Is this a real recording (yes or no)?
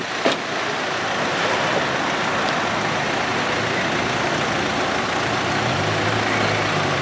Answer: yes